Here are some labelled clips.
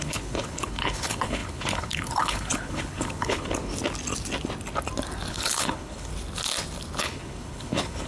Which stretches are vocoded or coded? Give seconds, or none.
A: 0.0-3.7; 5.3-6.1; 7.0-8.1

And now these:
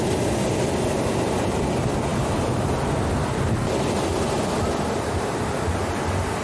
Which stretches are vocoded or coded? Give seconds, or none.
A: none

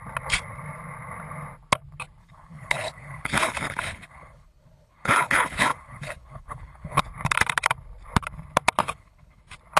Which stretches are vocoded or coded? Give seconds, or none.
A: 2.2-7.0; 8.8-9.4